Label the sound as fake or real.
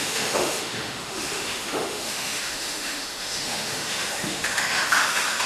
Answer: fake